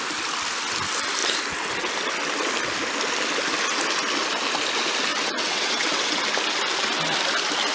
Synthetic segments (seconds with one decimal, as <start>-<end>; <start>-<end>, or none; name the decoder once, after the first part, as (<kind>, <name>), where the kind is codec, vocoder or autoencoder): 5.1-6.2 (vocoder, WaveNeXt)